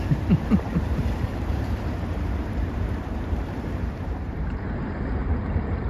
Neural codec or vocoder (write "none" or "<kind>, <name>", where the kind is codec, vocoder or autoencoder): vocoder, BigVGAN v2